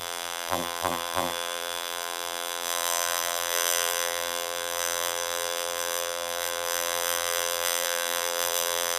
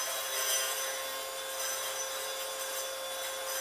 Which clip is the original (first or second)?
second